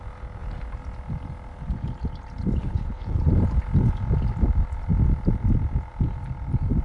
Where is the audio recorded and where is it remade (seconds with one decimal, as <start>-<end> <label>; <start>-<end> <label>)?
0.0-2.6 recorded; 2.6-3.3 remade; 3.3-6.8 recorded